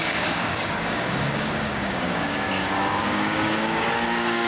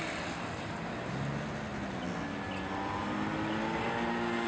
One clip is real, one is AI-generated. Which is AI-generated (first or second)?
first